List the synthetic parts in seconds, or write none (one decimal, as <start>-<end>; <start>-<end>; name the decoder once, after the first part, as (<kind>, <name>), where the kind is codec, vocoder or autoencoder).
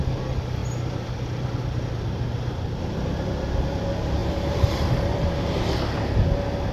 0.6-2.9 (vocoder, BigVGAN v2); 4.2-5.5